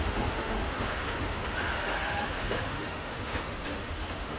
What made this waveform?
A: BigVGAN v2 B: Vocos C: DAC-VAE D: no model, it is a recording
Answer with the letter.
C